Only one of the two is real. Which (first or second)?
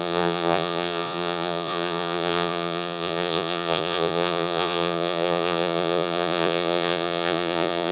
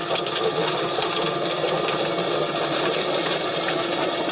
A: second